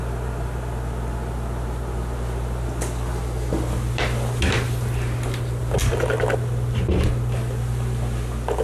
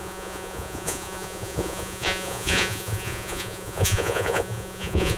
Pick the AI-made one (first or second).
second